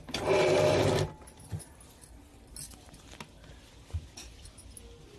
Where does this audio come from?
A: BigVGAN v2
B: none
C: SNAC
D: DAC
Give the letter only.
B